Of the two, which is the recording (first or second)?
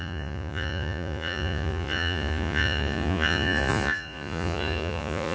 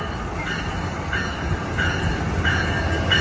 second